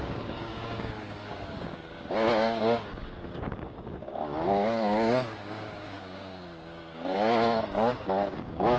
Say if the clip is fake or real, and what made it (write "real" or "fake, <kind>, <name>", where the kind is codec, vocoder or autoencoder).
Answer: fake, codec, DAC